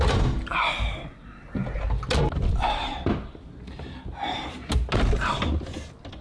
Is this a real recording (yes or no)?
yes